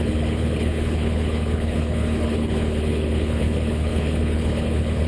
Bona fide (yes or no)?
no